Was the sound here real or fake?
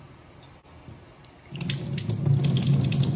real